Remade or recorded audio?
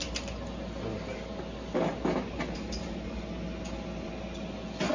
recorded